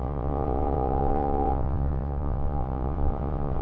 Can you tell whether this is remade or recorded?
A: remade